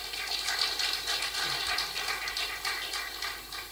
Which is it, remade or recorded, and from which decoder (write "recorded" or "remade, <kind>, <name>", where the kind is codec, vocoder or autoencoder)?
recorded